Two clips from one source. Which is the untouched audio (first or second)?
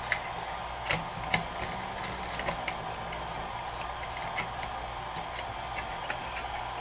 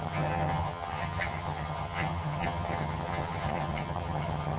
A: first